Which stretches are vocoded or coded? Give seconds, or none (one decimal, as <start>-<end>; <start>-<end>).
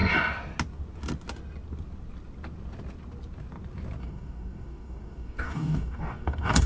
4.0-6.7